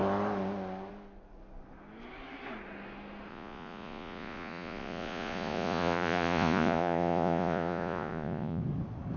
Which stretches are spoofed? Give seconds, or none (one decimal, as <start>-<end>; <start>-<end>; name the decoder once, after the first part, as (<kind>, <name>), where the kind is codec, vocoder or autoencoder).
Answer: 3.3-8.6 (vocoder, Vocos)